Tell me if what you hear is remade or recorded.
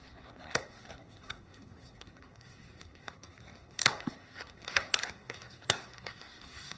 remade